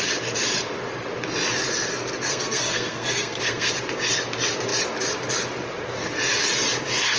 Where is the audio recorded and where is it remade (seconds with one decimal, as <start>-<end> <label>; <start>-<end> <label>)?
0.0-2.3 recorded; 2.3-3.7 remade; 3.7-7.2 recorded